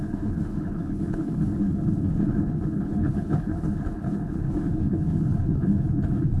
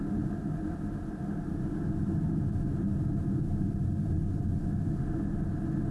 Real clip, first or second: second